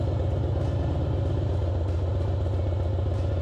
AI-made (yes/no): no